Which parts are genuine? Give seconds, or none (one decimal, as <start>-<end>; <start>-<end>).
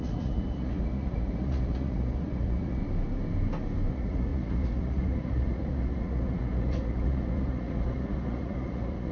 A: 2.8-3.9